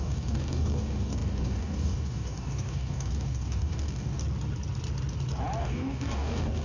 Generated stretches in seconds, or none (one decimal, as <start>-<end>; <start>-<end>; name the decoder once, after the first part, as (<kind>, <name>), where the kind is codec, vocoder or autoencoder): 0.0-4.2 (codec, DAC); 5.6-6.6